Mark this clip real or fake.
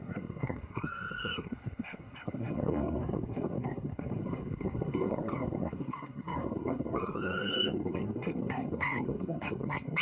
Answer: fake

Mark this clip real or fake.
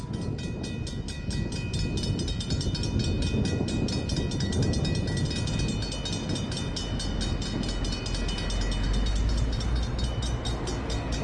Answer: real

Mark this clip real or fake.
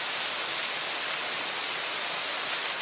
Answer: real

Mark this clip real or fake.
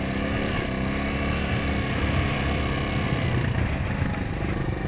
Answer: real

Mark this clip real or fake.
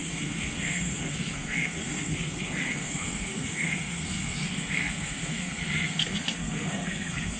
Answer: fake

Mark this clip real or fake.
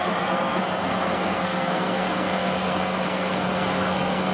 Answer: fake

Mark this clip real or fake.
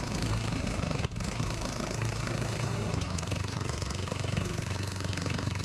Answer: fake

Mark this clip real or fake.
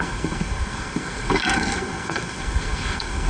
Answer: fake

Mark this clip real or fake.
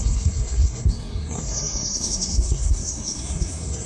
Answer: fake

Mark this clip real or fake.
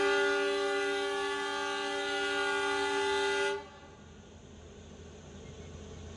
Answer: real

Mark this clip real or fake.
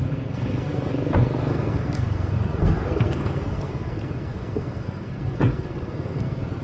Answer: fake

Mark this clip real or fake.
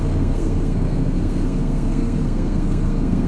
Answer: fake